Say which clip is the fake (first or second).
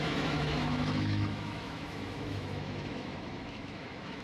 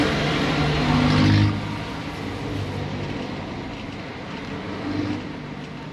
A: first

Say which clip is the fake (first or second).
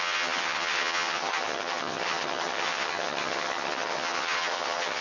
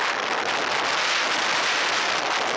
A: first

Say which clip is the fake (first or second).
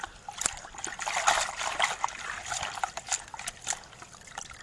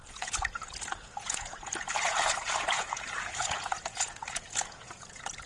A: second